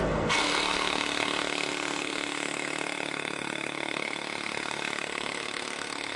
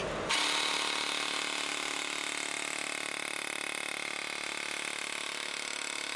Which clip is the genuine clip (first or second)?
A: second